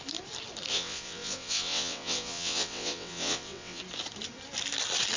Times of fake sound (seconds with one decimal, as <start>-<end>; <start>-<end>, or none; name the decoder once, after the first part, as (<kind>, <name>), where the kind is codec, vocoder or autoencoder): 0.7-3.8 (vocoder, WaveNeXt)